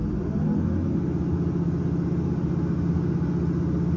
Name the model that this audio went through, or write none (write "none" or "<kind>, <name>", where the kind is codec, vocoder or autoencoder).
none